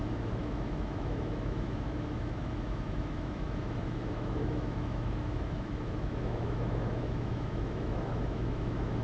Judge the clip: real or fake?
fake